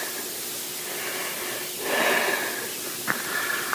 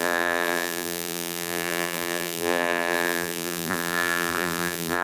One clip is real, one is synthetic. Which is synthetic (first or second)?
second